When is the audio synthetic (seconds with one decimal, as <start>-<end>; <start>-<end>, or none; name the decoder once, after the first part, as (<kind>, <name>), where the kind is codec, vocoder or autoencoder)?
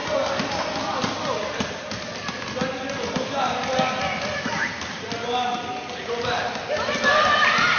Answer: none